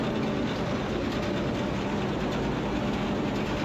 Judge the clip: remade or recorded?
recorded